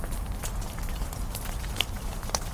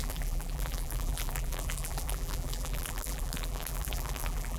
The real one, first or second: first